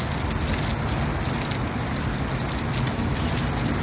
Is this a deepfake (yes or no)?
no